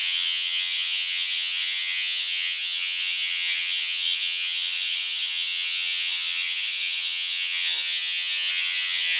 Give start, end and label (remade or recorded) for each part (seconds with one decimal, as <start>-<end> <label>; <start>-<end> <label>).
0.0-9.2 remade